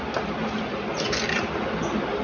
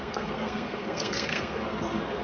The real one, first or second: first